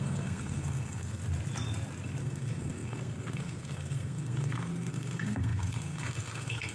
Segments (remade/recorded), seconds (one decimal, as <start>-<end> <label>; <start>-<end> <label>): 0.0-1.2 remade; 1.2-2.2 recorded; 2.2-6.7 remade